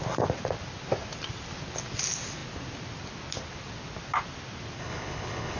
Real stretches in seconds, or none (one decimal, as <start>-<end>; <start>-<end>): 0.0-4.8